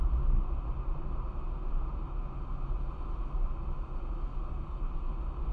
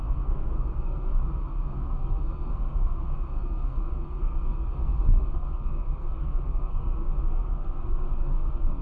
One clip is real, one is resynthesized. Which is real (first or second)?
first